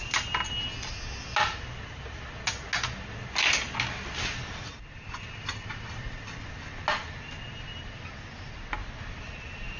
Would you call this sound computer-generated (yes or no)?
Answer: no